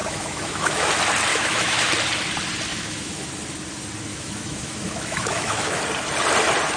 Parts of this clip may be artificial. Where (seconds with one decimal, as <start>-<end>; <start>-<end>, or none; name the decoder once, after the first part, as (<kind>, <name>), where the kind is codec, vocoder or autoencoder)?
0.0-0.9 (autoencoder, DAC-VAE); 1.3-1.9; 2.7-3.3; 4.1-5.8

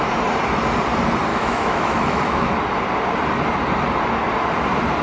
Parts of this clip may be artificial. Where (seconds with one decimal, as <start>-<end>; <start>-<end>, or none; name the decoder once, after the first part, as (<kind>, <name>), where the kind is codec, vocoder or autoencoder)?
1.3-2.5 (autoencoder, DAC-VAE)